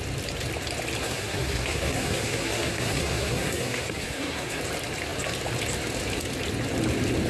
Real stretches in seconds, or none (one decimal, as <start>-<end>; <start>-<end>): 0.0-1.0; 4.6-7.3